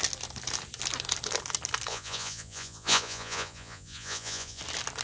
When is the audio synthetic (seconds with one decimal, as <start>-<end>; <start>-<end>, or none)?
1.9-4.6